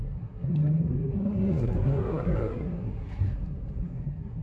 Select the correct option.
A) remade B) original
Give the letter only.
A